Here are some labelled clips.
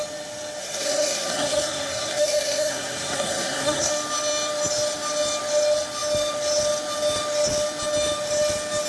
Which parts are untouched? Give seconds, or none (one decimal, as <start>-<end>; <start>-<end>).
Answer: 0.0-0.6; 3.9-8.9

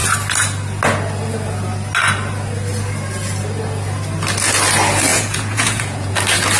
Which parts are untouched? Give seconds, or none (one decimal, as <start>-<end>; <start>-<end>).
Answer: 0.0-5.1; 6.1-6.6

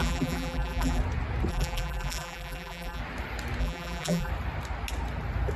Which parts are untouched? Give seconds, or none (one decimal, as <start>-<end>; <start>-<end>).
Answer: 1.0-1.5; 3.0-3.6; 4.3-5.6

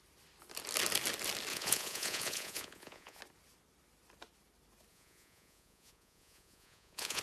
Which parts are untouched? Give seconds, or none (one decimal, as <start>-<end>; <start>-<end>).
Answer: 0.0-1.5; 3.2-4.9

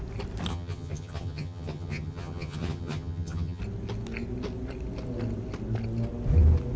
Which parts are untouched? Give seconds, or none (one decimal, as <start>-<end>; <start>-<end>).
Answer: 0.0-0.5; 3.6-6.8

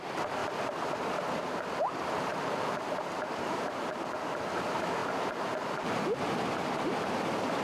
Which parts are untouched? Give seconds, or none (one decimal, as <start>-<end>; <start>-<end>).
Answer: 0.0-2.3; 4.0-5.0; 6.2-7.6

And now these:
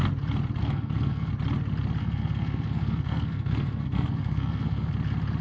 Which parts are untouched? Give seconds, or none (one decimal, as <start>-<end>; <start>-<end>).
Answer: 0.0-0.6; 1.3-2.0; 4.9-5.4

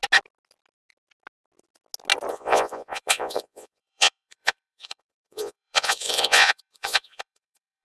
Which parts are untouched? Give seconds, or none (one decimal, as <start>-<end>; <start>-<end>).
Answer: 0.0-2.3